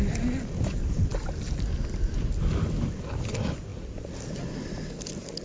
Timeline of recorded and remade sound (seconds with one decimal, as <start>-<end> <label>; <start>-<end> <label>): 0.0-5.4 recorded